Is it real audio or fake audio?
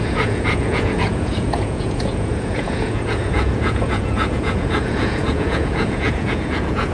fake